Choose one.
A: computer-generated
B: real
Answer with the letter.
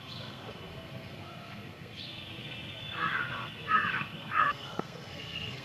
A